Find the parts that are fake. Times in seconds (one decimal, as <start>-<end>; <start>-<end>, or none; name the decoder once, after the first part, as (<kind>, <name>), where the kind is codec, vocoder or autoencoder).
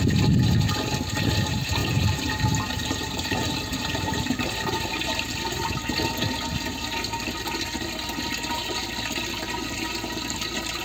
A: 1.8-4.9 (vocoder, BigVGAN v2)